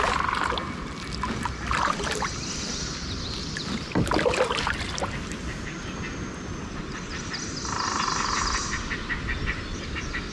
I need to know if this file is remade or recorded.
recorded